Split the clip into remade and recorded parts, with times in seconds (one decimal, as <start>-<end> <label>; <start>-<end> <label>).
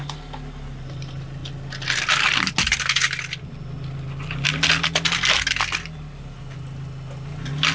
0.0-7.7 recorded